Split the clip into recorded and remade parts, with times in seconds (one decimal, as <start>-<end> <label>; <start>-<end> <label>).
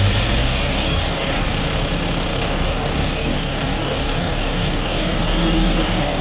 0.0-0.4 recorded; 0.4-1.6 remade; 1.6-2.3 recorded; 2.3-6.2 remade